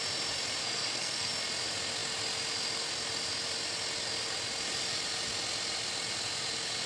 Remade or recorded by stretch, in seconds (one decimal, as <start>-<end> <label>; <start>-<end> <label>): 0.0-0.6 recorded; 0.6-1.3 remade; 1.3-6.9 recorded